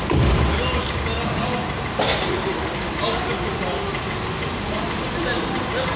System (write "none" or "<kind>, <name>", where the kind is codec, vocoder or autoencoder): none